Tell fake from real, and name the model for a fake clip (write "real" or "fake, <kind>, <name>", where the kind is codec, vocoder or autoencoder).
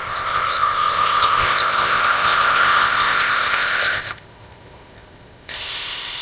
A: fake, codec, ZipCodec